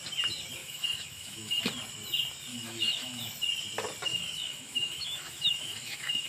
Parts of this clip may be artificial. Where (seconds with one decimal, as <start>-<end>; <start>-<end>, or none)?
0.6-1.6; 2.5-3.2; 4.1-6.3